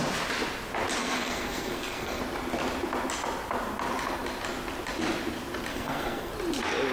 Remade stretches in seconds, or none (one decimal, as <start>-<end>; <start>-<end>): 1.0-2.2; 5.7-6.3